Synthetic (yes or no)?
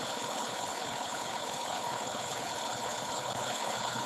yes